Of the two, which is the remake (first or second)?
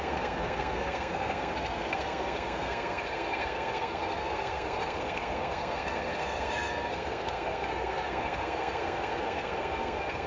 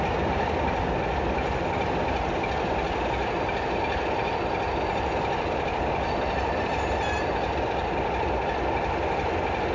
first